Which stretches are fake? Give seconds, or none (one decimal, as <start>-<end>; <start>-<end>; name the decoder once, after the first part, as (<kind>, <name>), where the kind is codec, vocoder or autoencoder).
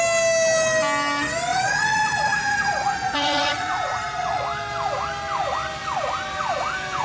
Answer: 1.5-4.4 (vocoder, Vocos)